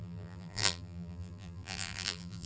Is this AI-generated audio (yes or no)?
yes